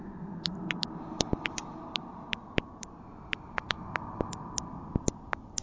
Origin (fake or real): real